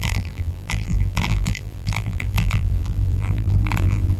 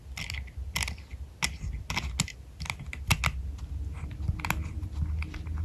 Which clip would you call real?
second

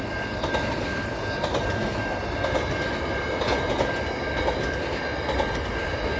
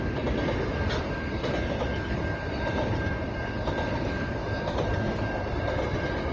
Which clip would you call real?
first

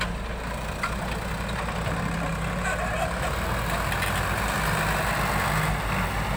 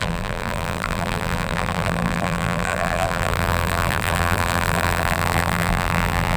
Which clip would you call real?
first